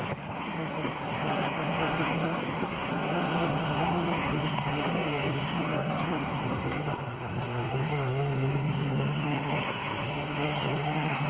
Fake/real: fake